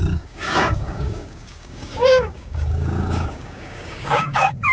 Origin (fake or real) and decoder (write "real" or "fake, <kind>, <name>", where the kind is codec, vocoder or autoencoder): fake, codec, DAC